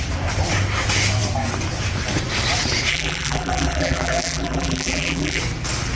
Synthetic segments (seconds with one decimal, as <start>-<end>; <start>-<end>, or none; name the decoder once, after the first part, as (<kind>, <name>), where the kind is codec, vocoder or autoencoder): 2.9-5.4 (vocoder, BigVGAN v2)